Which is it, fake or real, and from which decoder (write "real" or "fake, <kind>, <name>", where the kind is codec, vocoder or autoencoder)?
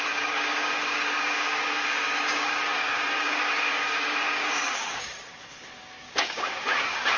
fake, codec, DAC